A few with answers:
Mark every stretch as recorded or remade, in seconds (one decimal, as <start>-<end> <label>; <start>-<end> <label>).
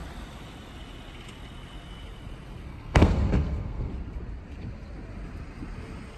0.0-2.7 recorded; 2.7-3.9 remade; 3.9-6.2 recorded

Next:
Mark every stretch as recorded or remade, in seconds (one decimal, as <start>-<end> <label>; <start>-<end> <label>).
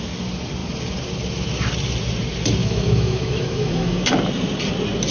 0.0-2.6 recorded; 2.6-4.1 remade; 4.1-5.1 recorded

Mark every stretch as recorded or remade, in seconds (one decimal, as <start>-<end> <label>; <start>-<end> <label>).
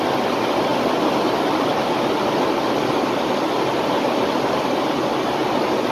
0.0-5.9 recorded